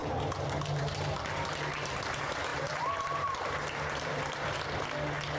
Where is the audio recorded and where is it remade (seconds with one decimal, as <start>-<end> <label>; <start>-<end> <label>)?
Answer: 0.0-2.5 recorded; 2.5-4.6 remade; 4.6-5.4 recorded